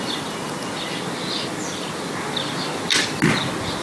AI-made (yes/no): no